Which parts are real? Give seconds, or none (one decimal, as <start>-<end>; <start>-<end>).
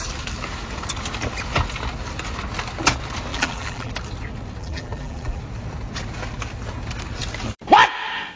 0.0-3.3; 3.9-4.6; 5.4-8.4